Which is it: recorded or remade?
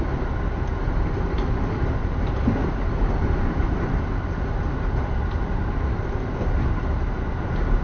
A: recorded